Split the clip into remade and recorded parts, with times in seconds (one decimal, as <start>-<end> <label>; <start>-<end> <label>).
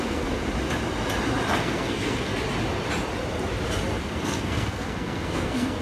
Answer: 0.0-0.4 remade; 0.4-1.5 recorded; 1.5-2.3 remade; 2.3-4.0 recorded; 4.0-5.8 remade